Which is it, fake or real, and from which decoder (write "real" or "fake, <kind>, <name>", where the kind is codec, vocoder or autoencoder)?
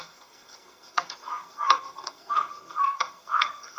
fake, codec, SNAC